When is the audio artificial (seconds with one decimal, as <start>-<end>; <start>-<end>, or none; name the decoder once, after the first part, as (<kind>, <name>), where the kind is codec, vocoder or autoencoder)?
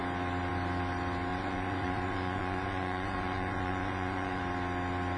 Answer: 1.3-4.4 (vocoder, Vocos)